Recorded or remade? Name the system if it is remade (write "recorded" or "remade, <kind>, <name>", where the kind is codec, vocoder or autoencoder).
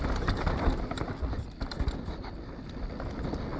recorded